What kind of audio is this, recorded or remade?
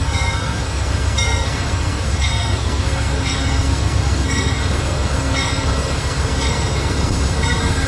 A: remade